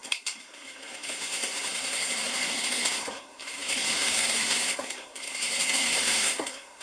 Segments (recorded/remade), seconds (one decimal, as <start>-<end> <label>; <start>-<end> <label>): 0.0-6.8 remade